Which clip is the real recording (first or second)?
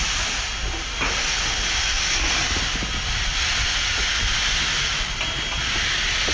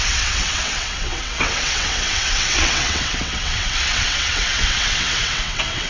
first